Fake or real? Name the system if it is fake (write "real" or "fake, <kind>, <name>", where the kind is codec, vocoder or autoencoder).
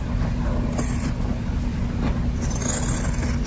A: real